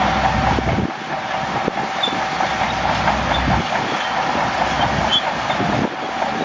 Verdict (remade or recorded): recorded